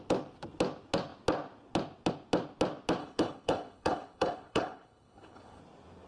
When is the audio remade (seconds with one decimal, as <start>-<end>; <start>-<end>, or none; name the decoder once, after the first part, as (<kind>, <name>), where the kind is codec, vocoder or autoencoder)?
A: 3.0-5.6 (codec, HILCodec)